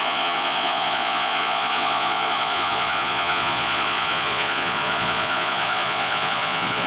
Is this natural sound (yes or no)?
no